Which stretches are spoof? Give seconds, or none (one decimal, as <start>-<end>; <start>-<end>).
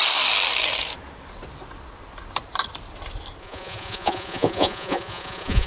3.4-5.7